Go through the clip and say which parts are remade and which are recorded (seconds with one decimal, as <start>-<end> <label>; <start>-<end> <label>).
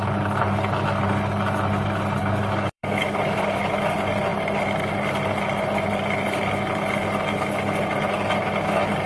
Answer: 0.0-2.2 recorded; 2.2-3.6 remade; 3.6-9.1 recorded